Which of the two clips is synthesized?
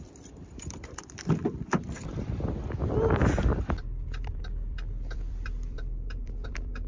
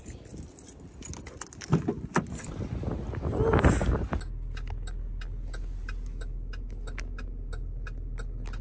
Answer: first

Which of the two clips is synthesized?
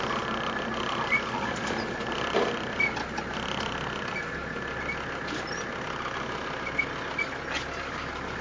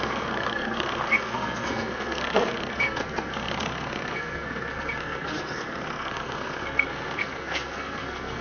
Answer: second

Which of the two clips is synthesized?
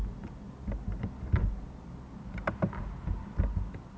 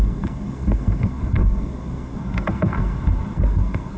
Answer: second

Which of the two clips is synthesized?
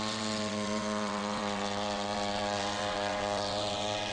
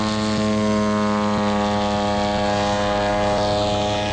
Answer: first